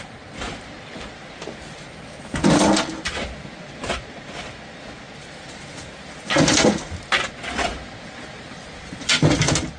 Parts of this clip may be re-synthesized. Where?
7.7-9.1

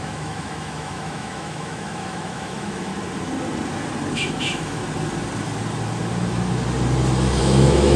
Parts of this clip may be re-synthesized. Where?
0.0-2.9; 4.1-4.8; 7.4-8.0

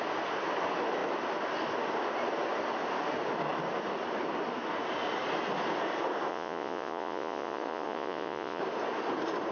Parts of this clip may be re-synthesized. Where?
6.3-8.6

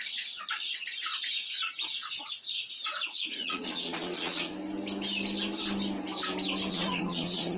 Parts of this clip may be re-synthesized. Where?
0.0-1.1; 2.7-4.5; 6.7-7.6

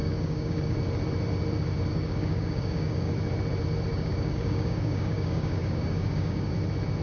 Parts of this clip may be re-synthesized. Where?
0.0-0.8; 1.9-3.1; 3.9-6.5

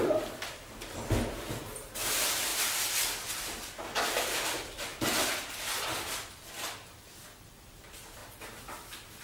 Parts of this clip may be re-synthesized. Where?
0.0-2.5; 3.1-4.9; 5.4-8.2

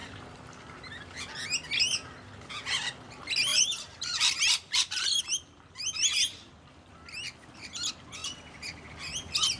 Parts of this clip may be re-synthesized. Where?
3.5-5.2